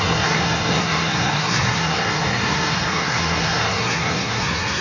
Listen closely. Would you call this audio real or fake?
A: fake